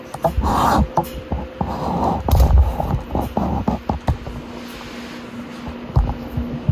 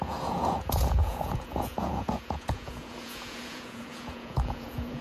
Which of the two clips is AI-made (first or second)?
second